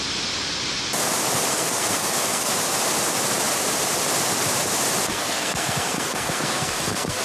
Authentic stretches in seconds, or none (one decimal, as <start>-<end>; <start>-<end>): 0.0-1.5; 2.5-5.1